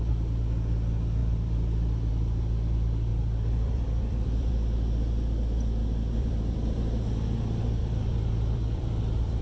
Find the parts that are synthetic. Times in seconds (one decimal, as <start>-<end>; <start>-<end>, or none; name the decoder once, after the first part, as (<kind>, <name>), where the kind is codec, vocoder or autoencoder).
3.1-4.5 (vocoder, BigVGAN v2); 5.8-6.8; 7.8-9.4